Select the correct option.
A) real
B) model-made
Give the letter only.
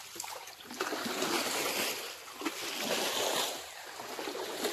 A